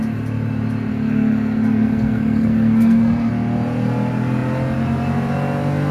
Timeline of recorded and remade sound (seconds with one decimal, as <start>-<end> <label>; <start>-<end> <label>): 0.0-0.9 recorded; 0.9-3.3 remade; 3.3-5.9 recorded